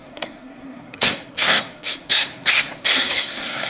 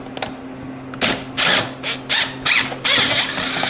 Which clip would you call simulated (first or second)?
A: first